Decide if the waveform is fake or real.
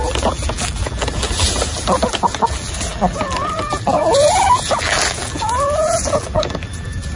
fake